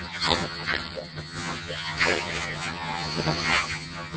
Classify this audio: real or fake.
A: fake